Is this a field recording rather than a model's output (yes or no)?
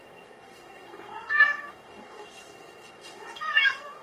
no